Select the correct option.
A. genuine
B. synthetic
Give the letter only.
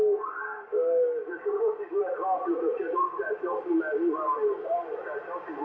A